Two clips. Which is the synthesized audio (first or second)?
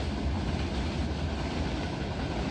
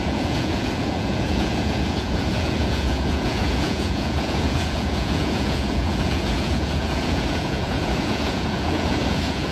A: second